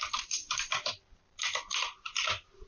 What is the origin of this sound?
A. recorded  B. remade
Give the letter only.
B